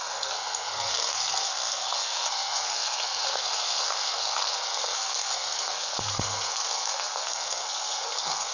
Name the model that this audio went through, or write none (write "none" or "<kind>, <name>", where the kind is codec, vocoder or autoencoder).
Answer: codec, SNAC